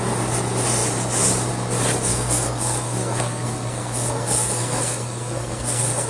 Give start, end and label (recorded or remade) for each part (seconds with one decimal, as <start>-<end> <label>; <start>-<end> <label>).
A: 0.0-2.1 recorded; 2.1-6.1 remade